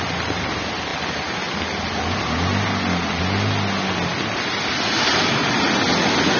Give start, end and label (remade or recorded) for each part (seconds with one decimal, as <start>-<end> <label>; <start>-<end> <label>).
0.0-6.4 recorded